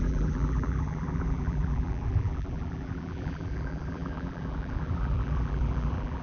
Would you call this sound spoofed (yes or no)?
yes